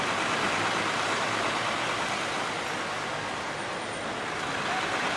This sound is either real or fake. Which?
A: real